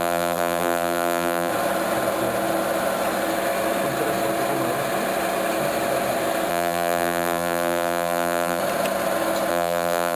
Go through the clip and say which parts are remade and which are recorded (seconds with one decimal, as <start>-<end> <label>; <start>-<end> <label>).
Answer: 0.0-1.5 remade; 1.5-6.5 recorded; 6.5-8.6 remade; 8.6-9.5 recorded; 9.5-10.1 remade